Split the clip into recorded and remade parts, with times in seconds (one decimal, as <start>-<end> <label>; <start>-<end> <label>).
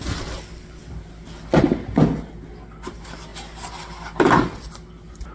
0.0-5.3 recorded